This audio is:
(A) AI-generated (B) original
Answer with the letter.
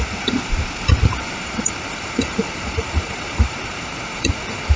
A